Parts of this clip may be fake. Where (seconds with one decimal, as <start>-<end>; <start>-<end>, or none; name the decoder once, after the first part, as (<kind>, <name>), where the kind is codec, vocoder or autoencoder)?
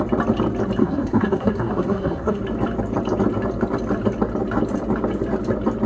0.8-2.4 (codec, SNAC)